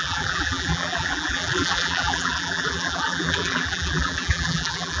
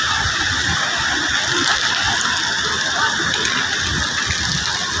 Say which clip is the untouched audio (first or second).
second